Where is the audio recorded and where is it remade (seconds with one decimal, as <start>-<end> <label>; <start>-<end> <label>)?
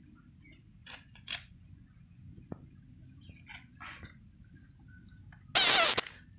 0.0-0.8 recorded; 0.8-2.4 remade; 2.4-3.5 recorded; 3.5-4.2 remade; 4.2-6.4 recorded